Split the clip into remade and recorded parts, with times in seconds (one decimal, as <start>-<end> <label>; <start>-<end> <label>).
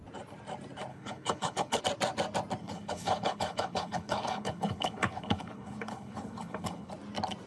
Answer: 0.0-0.9 recorded; 0.9-1.8 remade; 1.8-2.6 recorded; 2.6-6.9 remade; 6.9-7.5 recorded